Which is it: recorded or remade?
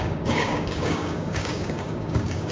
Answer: remade